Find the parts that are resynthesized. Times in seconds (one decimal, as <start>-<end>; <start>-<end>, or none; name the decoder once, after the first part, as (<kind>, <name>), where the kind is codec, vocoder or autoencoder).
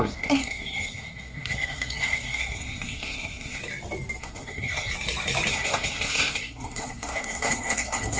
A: 0.0-3.6 (codec, SNAC); 4.2-4.9; 5.5-8.2